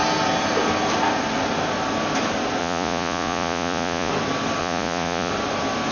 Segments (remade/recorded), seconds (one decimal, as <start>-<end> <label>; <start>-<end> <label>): 0.0-2.6 recorded; 2.6-4.1 remade; 4.1-4.6 recorded; 4.6-5.3 remade; 5.3-5.9 recorded